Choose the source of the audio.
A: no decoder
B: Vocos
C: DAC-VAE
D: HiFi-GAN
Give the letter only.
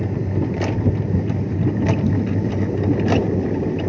A